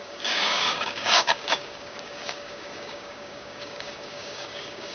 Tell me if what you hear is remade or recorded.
remade